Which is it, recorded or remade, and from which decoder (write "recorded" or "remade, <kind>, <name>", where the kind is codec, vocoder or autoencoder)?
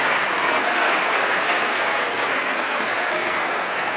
remade, codec, SNAC